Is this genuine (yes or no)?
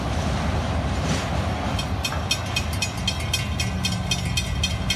yes